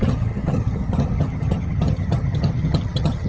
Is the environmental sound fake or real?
fake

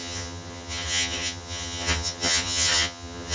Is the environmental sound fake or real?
fake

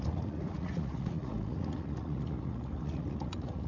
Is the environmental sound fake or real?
fake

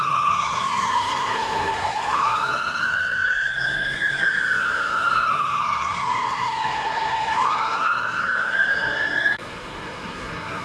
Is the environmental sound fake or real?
fake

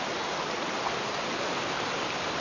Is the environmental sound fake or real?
real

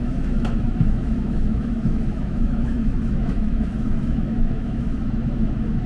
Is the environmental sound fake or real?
fake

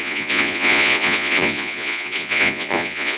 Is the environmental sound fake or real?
fake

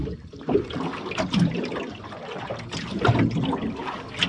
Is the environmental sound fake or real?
real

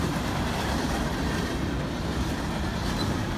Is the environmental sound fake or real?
real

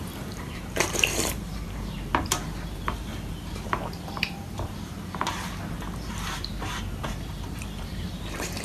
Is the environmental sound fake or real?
fake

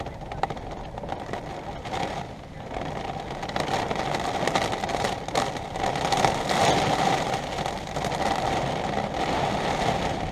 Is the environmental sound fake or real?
real